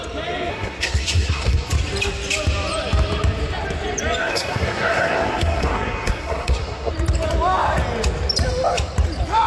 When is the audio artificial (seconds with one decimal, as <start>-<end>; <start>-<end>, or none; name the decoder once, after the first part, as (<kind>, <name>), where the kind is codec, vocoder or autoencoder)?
0.5-1.7 (codec, SNAC); 4.2-6.9